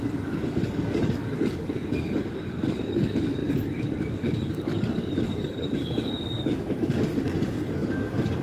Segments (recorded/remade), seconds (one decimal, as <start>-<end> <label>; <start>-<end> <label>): 0.0-8.4 remade